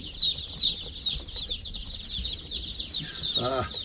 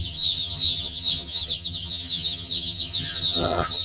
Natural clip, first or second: first